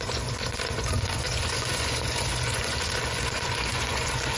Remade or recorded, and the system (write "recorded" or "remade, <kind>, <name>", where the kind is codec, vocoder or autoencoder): remade, vocoder, Vocos